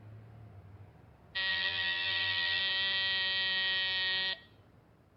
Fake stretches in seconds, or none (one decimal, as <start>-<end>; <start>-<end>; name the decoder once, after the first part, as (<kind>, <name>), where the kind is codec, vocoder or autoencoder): 1.5-2.6 (vocoder, BigVGAN v2)